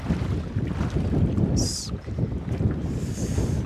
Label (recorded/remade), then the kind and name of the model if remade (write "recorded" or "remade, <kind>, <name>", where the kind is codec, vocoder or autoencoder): recorded